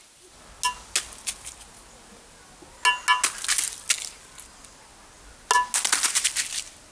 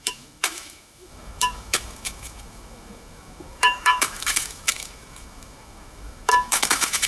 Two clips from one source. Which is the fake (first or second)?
second